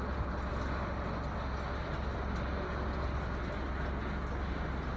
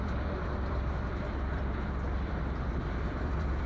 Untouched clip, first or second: first